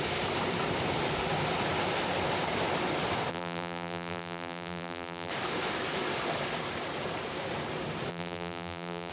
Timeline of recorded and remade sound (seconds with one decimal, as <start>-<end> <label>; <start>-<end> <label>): 0.0-3.3 recorded; 3.3-5.3 remade; 5.3-8.1 recorded; 8.1-9.1 remade